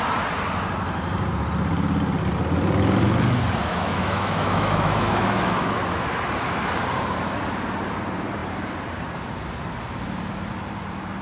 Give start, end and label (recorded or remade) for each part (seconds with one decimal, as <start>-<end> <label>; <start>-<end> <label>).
0.0-3.6 recorded; 3.6-5.8 remade; 5.8-11.2 recorded

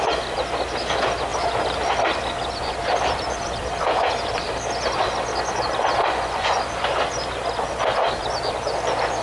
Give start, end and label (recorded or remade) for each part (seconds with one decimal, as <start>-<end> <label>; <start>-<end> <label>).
0.0-6.0 recorded; 6.0-6.6 remade; 6.6-9.2 recorded

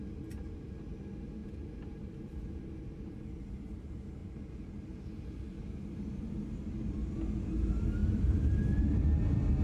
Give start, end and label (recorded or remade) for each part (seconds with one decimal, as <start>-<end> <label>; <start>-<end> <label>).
0.0-1.4 recorded; 1.4-3.3 remade; 3.3-8.0 recorded; 8.0-8.6 remade; 8.6-9.6 recorded

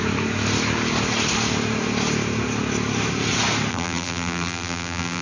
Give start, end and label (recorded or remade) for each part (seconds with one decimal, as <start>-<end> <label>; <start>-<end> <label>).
0.0-3.7 recorded; 3.7-5.2 remade

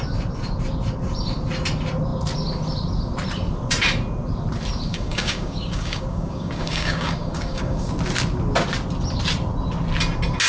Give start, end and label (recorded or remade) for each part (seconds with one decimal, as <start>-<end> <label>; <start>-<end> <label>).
0.0-4.9 recorded; 4.9-7.9 remade; 7.9-10.5 recorded